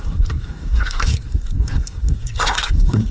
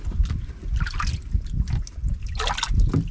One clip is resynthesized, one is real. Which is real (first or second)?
second